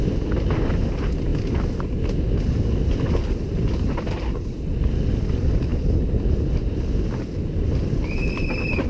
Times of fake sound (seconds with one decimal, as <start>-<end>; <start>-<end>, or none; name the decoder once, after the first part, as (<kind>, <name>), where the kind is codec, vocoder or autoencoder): none